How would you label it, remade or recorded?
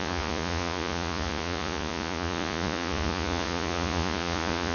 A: remade